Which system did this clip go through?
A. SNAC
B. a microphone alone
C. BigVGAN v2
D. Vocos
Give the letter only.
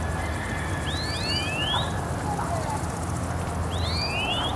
B